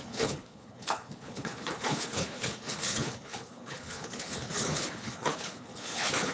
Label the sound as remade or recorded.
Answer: remade